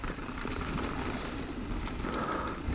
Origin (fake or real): real